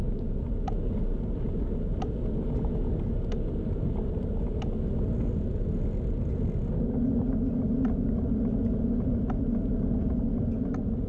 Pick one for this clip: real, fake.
real